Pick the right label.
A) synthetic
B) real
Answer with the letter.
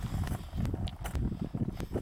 B